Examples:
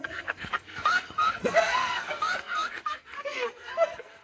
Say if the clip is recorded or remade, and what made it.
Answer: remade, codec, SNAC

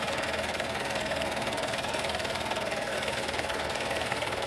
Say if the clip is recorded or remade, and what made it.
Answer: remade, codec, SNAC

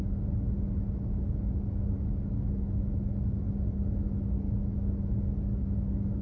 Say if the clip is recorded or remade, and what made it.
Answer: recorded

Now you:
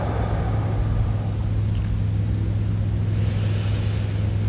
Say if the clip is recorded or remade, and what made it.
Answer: recorded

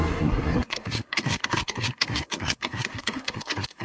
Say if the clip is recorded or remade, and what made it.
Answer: remade, codec, SNAC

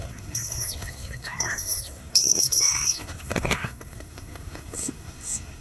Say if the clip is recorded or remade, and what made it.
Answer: remade, codec, SNAC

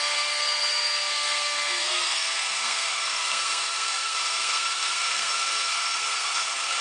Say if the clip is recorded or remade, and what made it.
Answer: remade, codec, SNAC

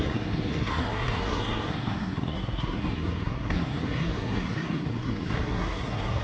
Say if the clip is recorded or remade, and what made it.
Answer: remade, codec, SNAC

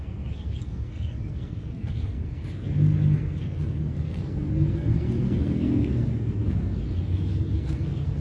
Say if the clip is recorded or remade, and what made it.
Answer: remade, codec, SNAC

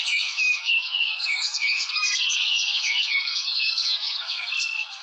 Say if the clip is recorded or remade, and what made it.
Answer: remade, codec, SNAC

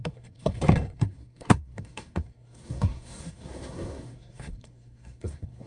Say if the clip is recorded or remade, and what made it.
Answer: remade, codec, SNAC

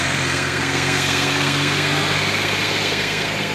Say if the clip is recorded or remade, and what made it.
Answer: remade, codec, SNAC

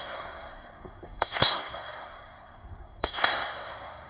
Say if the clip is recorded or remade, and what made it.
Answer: remade, codec, SNAC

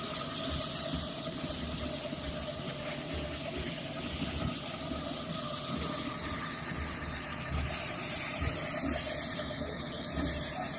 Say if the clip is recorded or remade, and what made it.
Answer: recorded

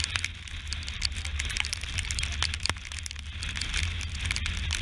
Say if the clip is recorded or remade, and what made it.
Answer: recorded